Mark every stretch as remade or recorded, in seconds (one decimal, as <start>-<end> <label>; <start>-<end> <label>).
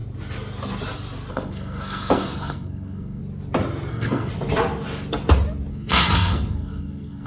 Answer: 0.0-1.3 recorded; 1.3-3.2 remade; 3.2-3.9 recorded; 3.9-4.3 remade; 4.3-5.7 recorded; 5.7-7.3 remade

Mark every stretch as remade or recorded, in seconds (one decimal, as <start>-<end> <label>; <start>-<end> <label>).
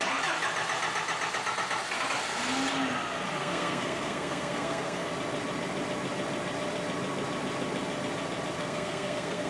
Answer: 0.0-3.4 recorded; 3.4-5.1 remade; 5.1-8.6 recorded; 8.6-9.5 remade